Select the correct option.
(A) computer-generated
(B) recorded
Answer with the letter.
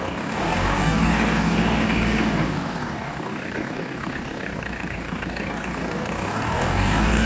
A